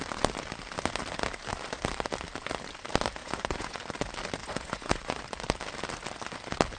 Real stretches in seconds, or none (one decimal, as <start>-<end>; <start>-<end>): 0.0-3.2; 3.8-4.4; 5.2-6.8